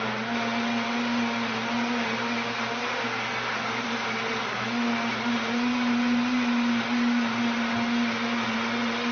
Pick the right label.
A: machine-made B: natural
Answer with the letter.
B